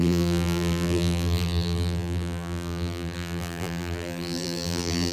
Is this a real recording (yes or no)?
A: no